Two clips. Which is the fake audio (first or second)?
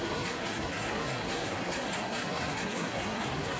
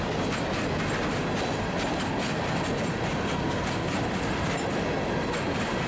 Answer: first